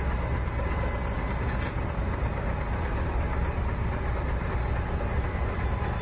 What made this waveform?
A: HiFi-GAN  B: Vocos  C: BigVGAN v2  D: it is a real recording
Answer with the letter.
D